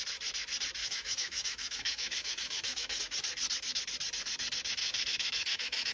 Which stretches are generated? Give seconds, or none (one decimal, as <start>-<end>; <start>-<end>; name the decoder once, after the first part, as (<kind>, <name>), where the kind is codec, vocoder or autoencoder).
0.8-3.0 (autoencoder, DAC-VAE); 4.8-5.9